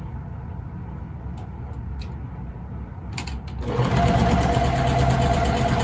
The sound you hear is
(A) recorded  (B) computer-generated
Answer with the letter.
A